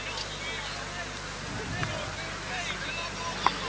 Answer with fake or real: real